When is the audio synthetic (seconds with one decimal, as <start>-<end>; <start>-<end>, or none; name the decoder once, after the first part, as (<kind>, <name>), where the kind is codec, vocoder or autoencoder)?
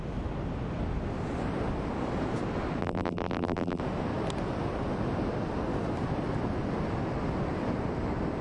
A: 2.8-3.8 (vocoder, BigVGAN v2)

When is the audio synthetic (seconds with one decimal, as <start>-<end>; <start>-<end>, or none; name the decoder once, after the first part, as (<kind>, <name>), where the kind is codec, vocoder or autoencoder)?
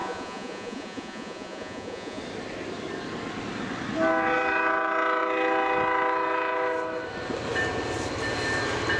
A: 0.0-2.2 (vocoder, Vocos)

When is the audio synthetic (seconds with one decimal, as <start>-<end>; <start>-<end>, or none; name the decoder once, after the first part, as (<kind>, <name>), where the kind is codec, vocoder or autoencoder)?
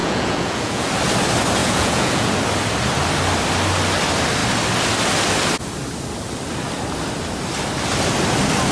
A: 0.0-0.9 (vocoder, Vocos); 1.6-2.3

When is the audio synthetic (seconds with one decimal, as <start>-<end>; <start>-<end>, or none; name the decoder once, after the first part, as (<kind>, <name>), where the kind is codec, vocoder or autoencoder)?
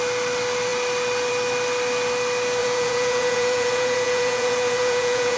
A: 2.6-5.4 (vocoder, Vocos)